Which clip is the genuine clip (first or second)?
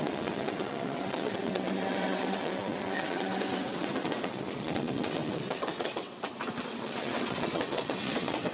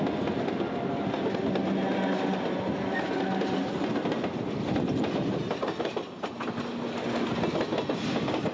second